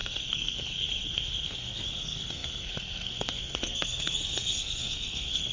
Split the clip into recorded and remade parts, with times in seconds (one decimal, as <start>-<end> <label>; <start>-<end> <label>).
0.0-5.5 remade